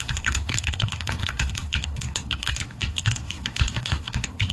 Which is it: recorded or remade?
remade